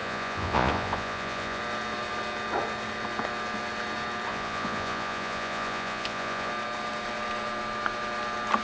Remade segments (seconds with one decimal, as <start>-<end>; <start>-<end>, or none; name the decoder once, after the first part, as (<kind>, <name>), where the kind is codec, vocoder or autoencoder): 0.0-1.6 (vocoder, Vocos); 4.3-6.5